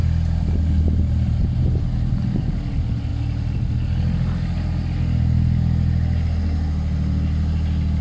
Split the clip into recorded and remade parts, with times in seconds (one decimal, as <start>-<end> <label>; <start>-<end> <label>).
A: 0.0-8.0 recorded